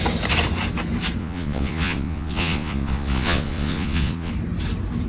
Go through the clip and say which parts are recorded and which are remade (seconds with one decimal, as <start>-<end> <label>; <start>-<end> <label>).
0.0-1.2 recorded; 1.2-4.3 remade; 4.3-5.1 recorded